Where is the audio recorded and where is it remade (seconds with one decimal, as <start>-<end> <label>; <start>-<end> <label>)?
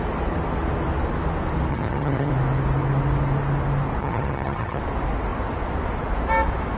0.0-1.7 recorded; 1.7-2.3 remade; 2.3-4.0 recorded; 4.0-4.8 remade; 4.8-6.8 recorded